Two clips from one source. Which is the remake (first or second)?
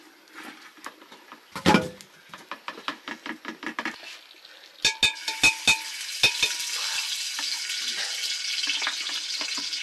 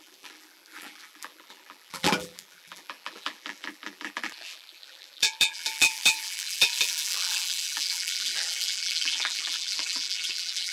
second